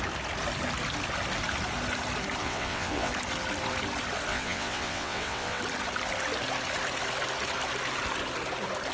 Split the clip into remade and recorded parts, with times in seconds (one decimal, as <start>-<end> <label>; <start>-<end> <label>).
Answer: 0.0-2.4 recorded; 2.4-3.1 remade; 3.1-4.3 recorded; 4.3-5.6 remade; 5.6-8.9 recorded